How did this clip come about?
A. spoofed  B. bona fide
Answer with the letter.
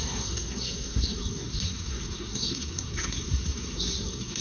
A